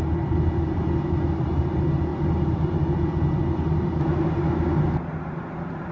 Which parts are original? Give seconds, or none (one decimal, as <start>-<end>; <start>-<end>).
0.0-5.9